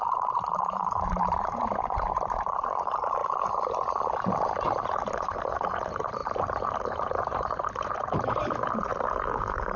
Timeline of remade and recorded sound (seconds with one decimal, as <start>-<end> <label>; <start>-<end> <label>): 0.0-3.2 remade; 3.2-5.0 recorded; 5.0-8.9 remade; 8.9-9.4 recorded; 9.4-9.8 remade